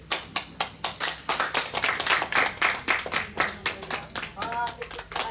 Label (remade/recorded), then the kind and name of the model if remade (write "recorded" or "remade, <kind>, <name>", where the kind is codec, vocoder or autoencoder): recorded